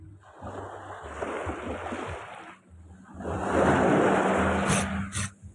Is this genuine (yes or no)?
yes